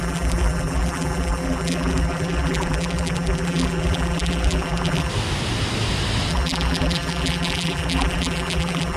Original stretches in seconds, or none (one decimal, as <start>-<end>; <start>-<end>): 5.1-6.3